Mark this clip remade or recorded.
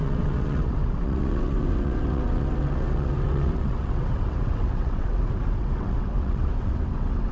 remade